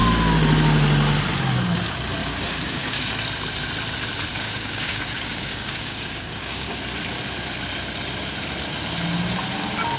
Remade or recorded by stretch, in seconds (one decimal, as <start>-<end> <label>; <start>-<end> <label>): 0.0-2.2 recorded; 2.2-3.0 remade; 3.0-4.3 recorded; 4.3-6.7 remade; 6.7-10.0 recorded